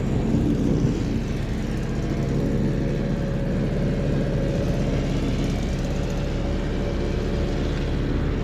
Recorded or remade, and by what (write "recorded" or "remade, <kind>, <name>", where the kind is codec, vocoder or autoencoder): recorded